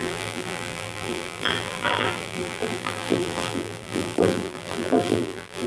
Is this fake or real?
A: fake